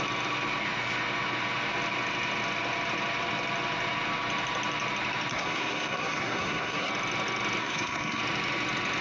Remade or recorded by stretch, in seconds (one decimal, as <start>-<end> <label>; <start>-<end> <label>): 0.0-5.3 recorded; 5.3-6.9 remade; 6.9-7.6 recorded; 7.6-8.2 remade; 8.2-9.0 recorded